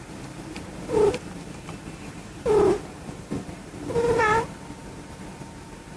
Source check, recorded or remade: remade